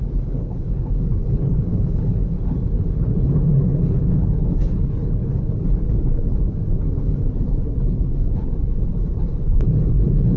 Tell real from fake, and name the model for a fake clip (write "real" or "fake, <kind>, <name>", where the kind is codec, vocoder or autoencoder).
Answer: fake, codec, HILCodec